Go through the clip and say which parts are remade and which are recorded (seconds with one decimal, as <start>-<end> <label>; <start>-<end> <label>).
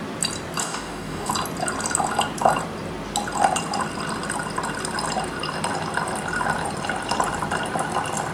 0.0-0.6 recorded; 0.6-1.3 remade; 1.3-8.3 recorded